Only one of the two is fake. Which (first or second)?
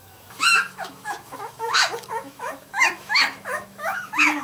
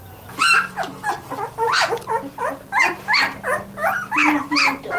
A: first